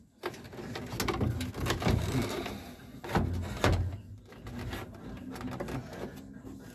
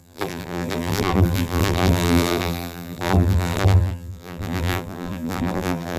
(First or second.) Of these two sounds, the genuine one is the first